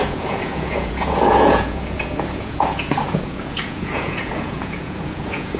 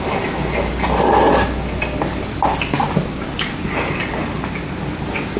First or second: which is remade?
first